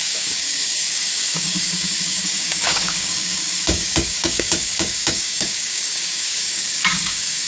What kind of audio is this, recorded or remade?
remade